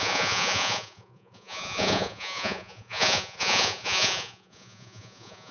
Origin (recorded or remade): remade